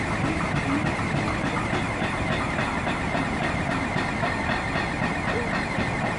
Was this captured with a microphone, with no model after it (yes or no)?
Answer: yes